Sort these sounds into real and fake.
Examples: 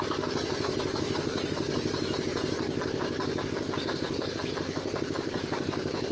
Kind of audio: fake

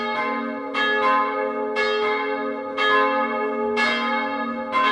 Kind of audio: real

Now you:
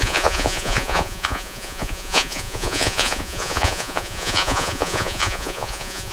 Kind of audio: fake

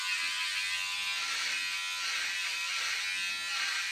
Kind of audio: real